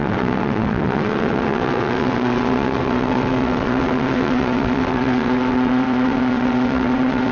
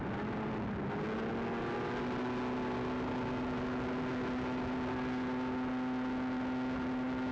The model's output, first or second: first